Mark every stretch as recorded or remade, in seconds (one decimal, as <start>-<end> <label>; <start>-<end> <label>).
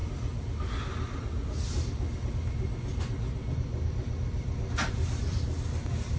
0.0-6.2 recorded